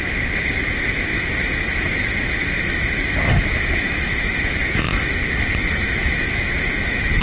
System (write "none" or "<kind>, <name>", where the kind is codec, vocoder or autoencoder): autoencoder, DAC-VAE